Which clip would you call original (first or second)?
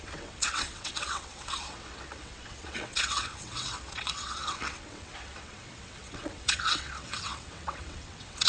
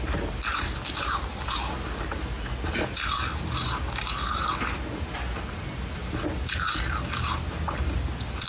second